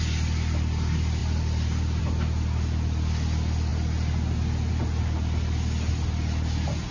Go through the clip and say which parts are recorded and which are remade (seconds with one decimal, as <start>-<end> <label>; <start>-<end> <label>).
0.0-6.9 recorded